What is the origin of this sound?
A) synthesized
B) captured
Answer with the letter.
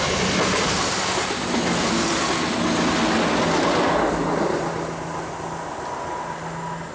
B